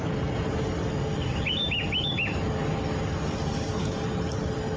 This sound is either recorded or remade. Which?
recorded